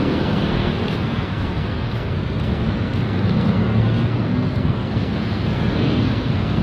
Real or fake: fake